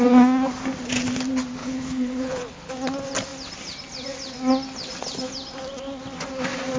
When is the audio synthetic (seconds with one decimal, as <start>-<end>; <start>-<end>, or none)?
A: 1.6-2.7